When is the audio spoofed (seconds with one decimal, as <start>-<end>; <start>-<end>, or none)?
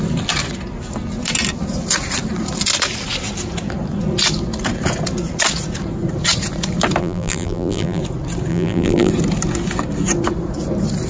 7.0-8.0; 8.5-9.1